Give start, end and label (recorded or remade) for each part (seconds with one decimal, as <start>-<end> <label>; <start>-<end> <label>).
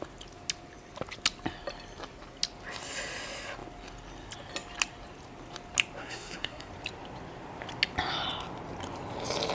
0.0-6.0 recorded; 6.0-6.7 remade; 6.7-9.5 recorded